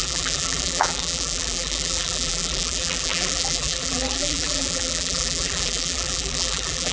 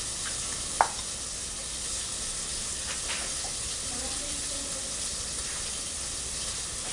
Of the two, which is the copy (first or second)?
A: first